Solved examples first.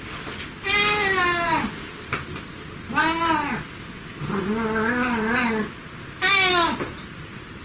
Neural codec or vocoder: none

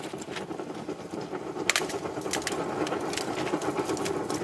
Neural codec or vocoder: none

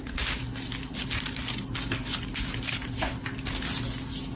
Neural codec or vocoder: none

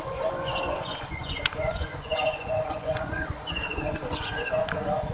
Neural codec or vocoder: vocoder, Vocos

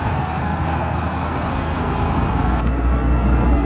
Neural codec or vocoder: codec, SNAC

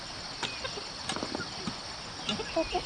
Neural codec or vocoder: none